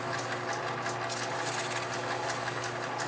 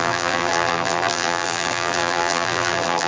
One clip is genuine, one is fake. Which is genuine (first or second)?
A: first